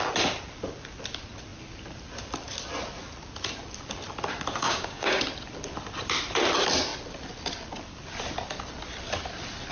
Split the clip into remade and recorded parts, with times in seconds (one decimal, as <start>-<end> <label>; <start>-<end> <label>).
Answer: 0.0-4.6 recorded; 4.6-5.2 remade; 5.2-9.7 recorded